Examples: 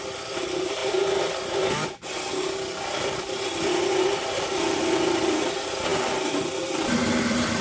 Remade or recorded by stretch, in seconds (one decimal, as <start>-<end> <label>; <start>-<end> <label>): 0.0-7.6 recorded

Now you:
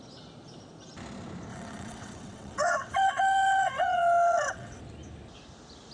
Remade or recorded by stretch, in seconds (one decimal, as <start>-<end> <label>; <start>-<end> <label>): 0.0-1.5 recorded; 1.5-4.8 remade; 4.8-5.9 recorded

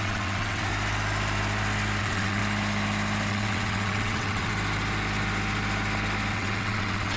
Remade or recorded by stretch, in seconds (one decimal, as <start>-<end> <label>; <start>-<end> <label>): 0.0-0.7 remade; 0.7-2.0 recorded; 2.0-2.4 remade; 2.4-3.3 recorded; 3.3-4.5 remade; 4.5-6.3 recorded; 6.3-7.2 remade